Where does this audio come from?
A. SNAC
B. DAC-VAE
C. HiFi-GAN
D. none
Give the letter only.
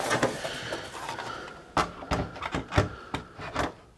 D